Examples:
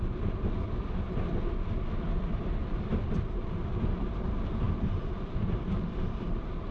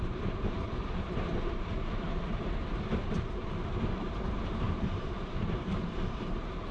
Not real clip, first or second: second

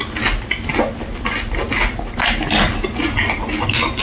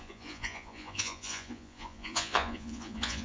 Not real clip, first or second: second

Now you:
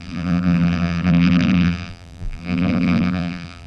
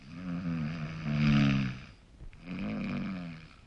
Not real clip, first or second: first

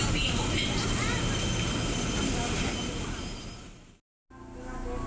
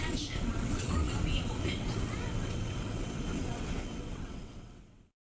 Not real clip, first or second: second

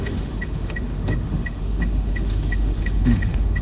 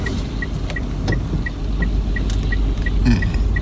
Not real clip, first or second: first